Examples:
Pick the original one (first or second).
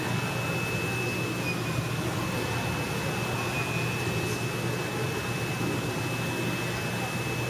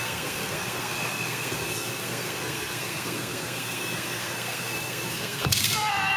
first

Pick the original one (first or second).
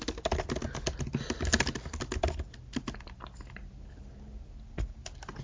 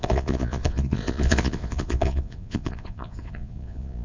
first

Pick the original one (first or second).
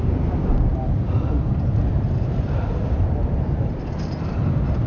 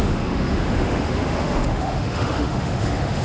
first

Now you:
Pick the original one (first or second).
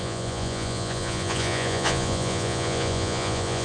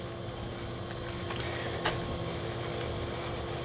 second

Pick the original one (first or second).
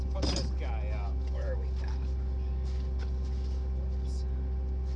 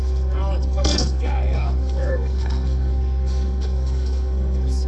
first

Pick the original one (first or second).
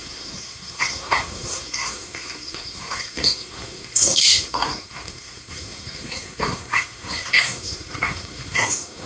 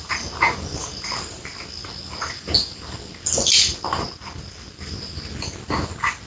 second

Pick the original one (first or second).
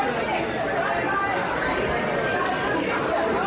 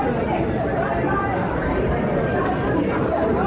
first